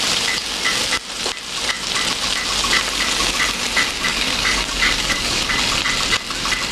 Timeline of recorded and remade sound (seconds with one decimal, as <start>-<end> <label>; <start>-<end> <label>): 0.0-4.1 recorded; 4.1-5.6 remade; 5.6-6.7 recorded